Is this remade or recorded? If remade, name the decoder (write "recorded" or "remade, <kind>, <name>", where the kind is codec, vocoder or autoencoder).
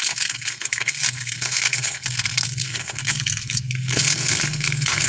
remade, codec, SNAC